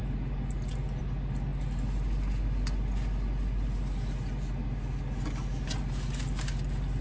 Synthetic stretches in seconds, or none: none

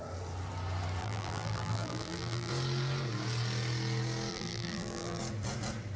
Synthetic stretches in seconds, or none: 1.0-2.5 (vocoder, BigVGAN v2); 4.3-5.2

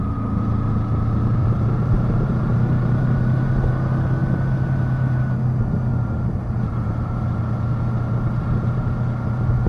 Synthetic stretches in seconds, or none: 1.4-3.7 (vocoder, BigVGAN v2); 4.2-5.2; 5.9-7.4